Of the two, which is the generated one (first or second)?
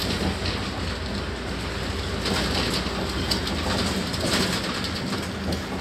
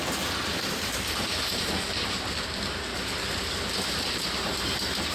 second